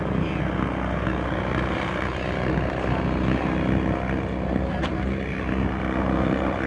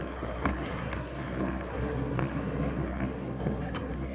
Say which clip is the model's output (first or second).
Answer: second